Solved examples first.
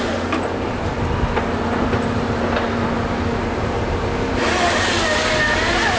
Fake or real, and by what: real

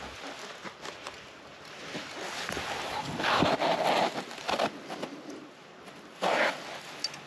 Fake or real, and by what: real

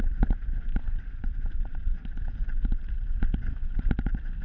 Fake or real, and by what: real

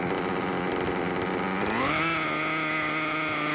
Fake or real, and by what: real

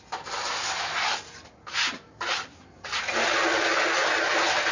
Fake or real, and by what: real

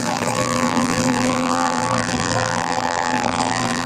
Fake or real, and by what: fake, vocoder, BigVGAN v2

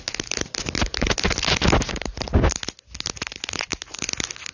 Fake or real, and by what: real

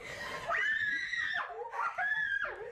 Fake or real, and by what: real